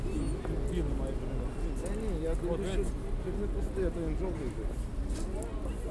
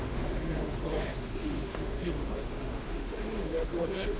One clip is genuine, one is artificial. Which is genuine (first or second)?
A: first